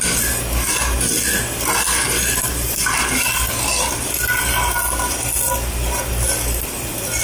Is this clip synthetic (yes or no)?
no